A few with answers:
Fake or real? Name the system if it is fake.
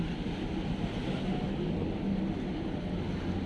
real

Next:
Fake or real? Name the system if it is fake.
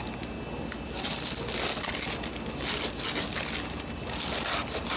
real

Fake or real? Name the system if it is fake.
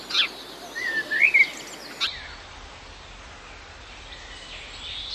real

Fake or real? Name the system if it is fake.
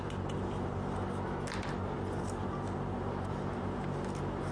real